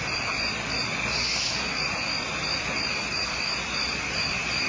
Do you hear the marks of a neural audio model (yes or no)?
no